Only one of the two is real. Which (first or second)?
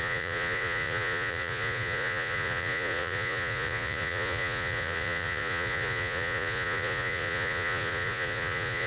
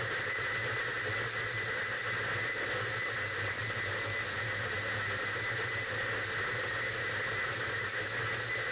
second